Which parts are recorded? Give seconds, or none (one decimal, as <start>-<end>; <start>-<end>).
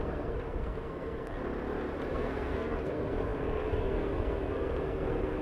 1.4-2.1